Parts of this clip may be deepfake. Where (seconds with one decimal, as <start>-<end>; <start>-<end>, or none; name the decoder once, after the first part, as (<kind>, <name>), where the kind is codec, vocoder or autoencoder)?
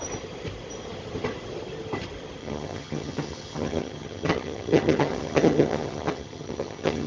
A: 2.4-7.1 (vocoder, HiFi-GAN)